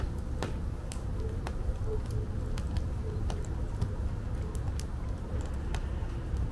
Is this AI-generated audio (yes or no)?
no